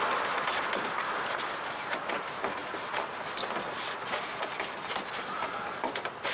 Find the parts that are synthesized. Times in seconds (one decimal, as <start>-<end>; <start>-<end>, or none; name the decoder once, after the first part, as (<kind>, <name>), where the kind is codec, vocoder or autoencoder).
none